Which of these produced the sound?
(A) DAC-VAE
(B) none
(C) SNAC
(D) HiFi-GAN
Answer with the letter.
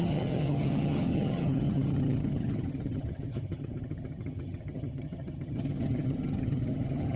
D